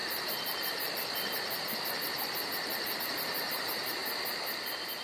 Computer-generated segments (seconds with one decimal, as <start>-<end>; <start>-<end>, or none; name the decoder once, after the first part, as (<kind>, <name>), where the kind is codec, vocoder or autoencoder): 3.0-5.0 (vocoder, BigVGAN v2)